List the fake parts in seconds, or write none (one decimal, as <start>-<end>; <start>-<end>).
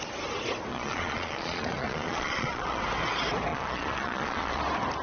0.7-2.8; 3.5-4.6